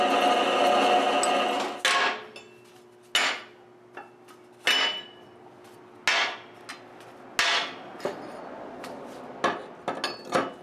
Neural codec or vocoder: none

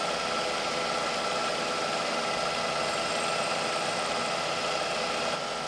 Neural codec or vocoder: none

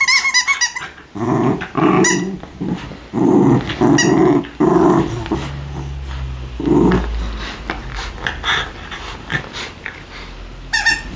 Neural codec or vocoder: none